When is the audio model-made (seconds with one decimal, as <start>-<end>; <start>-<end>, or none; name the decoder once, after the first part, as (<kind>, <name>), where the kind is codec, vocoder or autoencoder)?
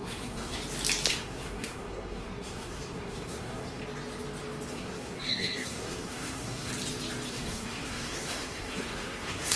0.0-0.6 (codec, SNAC); 1.1-3.8; 4.7-6.7; 7.3-9.6